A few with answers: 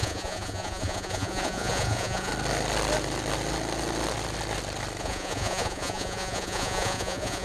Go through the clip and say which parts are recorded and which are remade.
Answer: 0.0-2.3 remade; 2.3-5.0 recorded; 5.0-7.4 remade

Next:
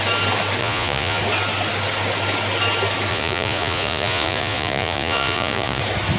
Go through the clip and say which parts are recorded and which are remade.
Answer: 0.0-0.6 recorded; 0.6-1.2 remade; 1.2-3.1 recorded; 3.1-5.8 remade; 5.8-6.2 recorded

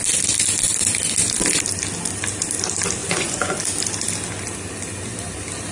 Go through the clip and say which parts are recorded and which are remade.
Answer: 0.0-3.0 recorded; 3.0-3.6 remade; 3.6-5.7 recorded

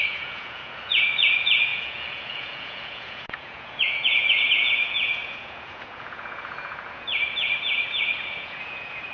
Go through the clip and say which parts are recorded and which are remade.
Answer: 0.0-9.1 remade

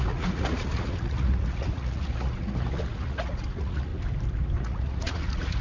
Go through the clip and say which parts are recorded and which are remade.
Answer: 0.0-3.9 remade; 3.9-4.6 recorded; 4.6-5.6 remade